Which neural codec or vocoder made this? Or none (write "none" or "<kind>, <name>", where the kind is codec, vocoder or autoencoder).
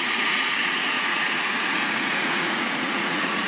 vocoder, Vocos